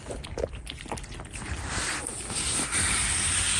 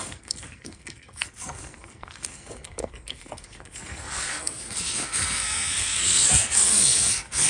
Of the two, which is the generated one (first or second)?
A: second